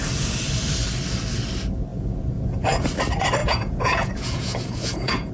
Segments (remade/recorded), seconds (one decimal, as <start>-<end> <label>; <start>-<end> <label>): 0.0-1.9 recorded; 1.9-2.6 remade; 2.6-3.4 recorded; 3.4-5.3 remade